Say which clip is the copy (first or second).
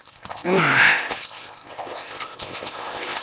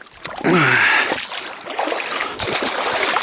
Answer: first